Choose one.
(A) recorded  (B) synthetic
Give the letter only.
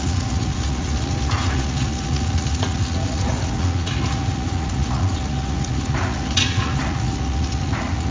B